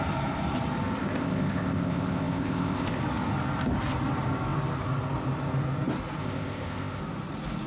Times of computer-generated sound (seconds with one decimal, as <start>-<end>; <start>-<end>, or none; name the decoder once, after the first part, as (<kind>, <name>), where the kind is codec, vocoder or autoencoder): 1.0-3.0 (codec, ZipCodec); 6.2-7.0